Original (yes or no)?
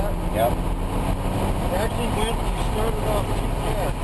yes